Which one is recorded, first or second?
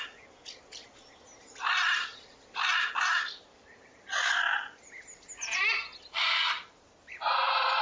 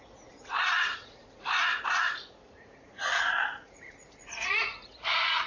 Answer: first